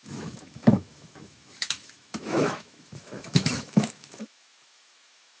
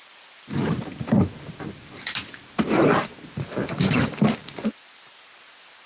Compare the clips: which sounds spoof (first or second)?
first